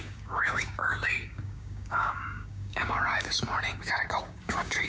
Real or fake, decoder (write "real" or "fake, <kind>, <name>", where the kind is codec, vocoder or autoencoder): fake, codec, DAC